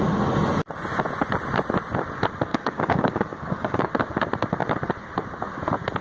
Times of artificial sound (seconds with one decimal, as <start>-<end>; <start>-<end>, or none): 2.5-3.9